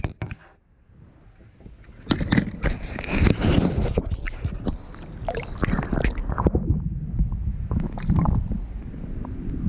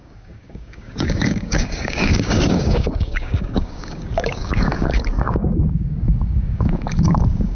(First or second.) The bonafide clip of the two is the first